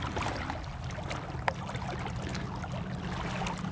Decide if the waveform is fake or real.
real